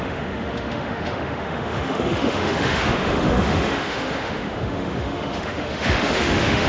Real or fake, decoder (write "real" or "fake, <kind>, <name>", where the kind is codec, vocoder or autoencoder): fake, autoencoder, DAC-VAE